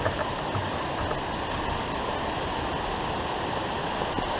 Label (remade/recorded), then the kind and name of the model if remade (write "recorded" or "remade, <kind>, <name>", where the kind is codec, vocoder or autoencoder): recorded